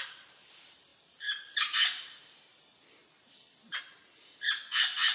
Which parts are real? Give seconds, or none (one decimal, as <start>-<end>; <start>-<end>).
none